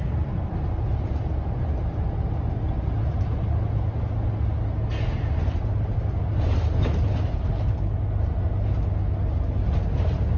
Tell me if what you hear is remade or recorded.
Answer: recorded